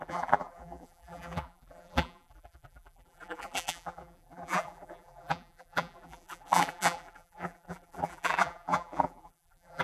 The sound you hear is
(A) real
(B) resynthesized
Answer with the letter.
B